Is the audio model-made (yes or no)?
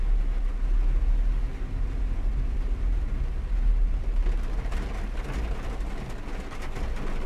no